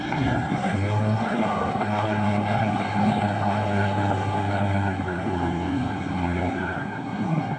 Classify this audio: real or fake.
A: fake